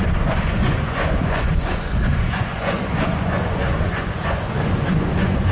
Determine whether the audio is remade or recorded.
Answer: remade